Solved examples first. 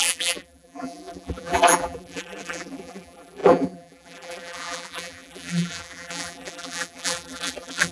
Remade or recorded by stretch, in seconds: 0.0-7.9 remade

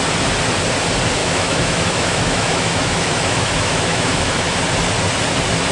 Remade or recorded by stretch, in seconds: 0.0-1.2 recorded; 1.2-4.6 remade; 4.6-5.7 recorded

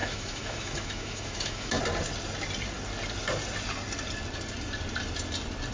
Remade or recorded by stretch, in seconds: 0.0-1.8 remade; 1.8-5.7 recorded

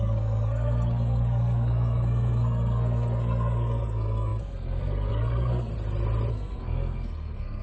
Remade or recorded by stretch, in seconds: 0.0-5.7 remade; 5.7-6.3 recorded; 6.3-7.6 remade

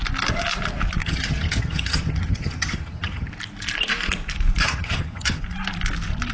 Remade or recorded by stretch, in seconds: 0.0-1.0 recorded; 1.0-3.3 remade; 3.3-4.6 recorded; 4.6-5.4 remade; 5.4-6.3 recorded

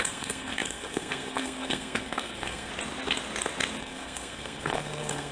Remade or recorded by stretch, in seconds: 0.0-2.7 remade; 2.7-3.8 recorded; 3.8-5.3 remade